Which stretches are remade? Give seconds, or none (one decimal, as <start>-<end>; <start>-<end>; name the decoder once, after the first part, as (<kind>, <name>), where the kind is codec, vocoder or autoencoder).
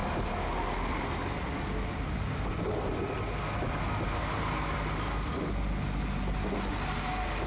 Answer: none